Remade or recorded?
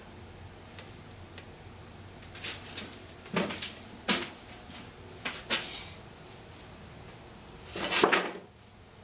recorded